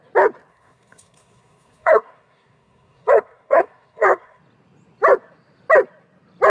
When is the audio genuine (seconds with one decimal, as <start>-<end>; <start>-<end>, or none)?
0.0-0.5; 4.4-6.5